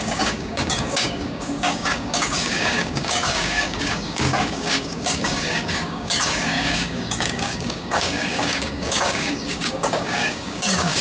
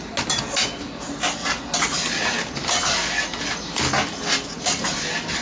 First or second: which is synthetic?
first